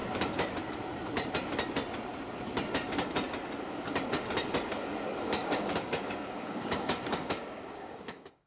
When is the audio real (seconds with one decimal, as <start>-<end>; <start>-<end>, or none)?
0.0-5.4